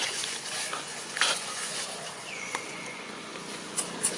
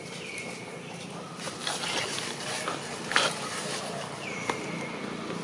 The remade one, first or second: first